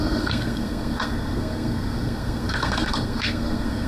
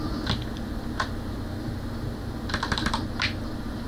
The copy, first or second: first